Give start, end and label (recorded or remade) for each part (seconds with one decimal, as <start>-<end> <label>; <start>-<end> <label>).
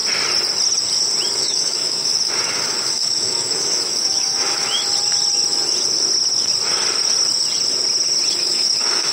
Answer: 0.0-1.4 recorded; 1.4-4.8 remade; 4.8-8.3 recorded; 8.3-9.1 remade